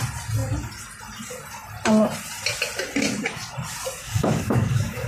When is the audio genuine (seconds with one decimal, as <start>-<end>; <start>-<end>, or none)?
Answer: 0.0-4.0